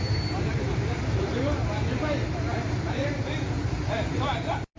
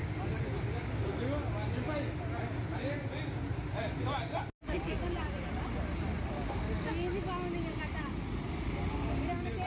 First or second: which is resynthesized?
first